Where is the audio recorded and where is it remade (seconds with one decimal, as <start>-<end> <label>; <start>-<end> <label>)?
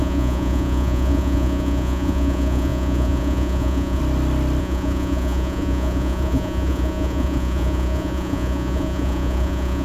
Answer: 0.0-4.0 remade; 4.0-4.6 recorded; 4.6-9.8 remade